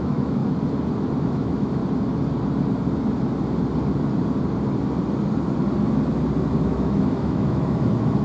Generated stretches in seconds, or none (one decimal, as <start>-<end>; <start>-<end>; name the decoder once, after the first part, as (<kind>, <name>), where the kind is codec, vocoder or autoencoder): 0.0-0.4 (autoencoder, DAC-VAE); 1.2-1.8; 6.6-8.2